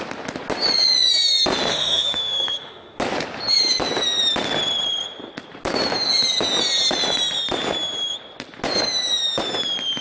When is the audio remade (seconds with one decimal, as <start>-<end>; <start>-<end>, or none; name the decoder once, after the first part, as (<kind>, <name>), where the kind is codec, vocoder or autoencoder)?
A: 1.7-3.0 (autoencoder, DAC-VAE)